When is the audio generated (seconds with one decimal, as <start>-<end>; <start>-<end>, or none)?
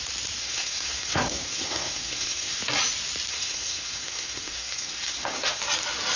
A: 0.4-2.6; 3.3-5.6